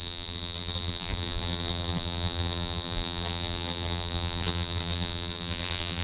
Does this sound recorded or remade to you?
remade